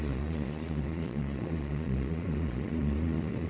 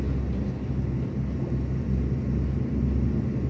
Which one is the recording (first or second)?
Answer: second